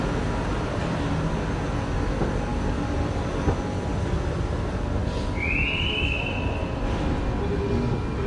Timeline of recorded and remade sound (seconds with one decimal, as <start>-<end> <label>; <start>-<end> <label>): 0.0-0.5 recorded; 0.5-1.1 remade; 1.1-8.3 recorded